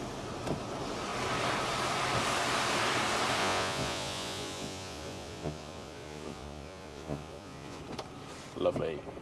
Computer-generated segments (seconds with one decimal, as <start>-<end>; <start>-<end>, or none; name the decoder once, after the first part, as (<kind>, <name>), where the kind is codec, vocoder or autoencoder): 3.4-7.8 (vocoder, Vocos)